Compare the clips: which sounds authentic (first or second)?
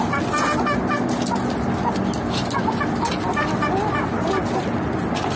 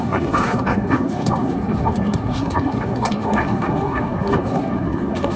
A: first